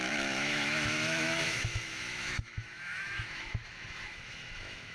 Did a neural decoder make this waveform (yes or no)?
yes